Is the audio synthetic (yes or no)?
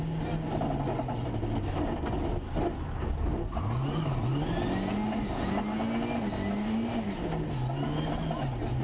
no